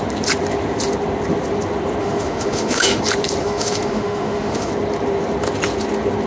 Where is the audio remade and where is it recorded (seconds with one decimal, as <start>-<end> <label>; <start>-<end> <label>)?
0.0-2.0 recorded; 2.0-3.0 remade; 3.0-3.4 recorded; 3.4-4.7 remade; 4.7-6.3 recorded